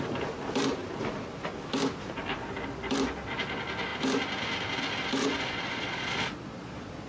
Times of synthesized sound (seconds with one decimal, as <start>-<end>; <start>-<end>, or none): 5.2-7.1